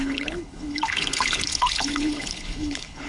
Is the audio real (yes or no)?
no